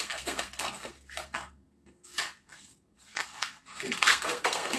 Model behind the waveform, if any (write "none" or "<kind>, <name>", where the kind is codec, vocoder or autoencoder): codec, SNAC